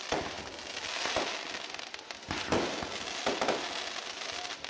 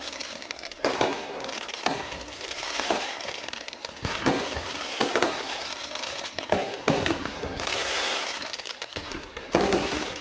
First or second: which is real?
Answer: first